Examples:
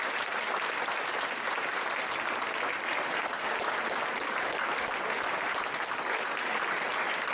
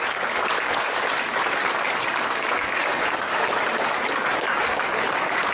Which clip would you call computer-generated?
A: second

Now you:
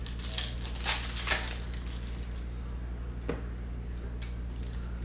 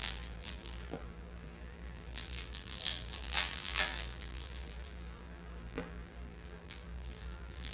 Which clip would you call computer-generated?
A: second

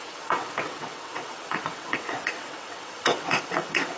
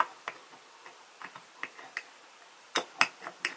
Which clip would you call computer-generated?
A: first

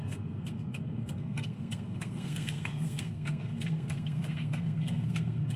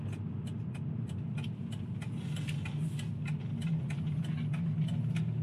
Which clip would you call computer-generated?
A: first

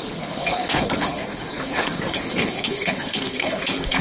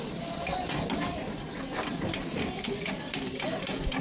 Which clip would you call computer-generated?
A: first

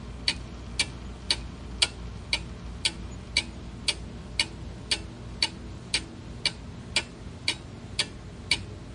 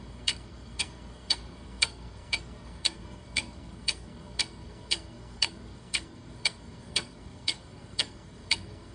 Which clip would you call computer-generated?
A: second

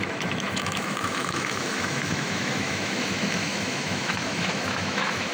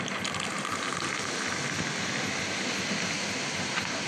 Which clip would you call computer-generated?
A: first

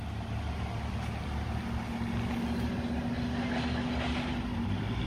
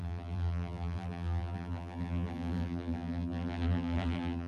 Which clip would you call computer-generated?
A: second